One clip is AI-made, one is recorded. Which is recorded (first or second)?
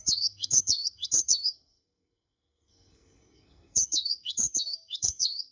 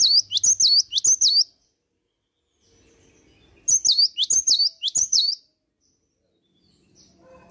second